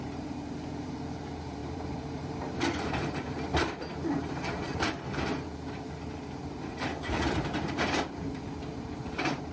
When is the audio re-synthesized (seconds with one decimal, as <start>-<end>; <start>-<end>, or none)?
0.0-9.5